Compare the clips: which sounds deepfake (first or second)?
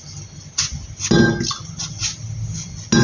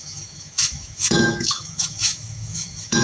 second